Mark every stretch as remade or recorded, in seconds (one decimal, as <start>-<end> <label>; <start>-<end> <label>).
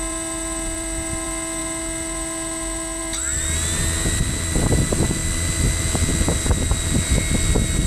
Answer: 0.0-7.9 recorded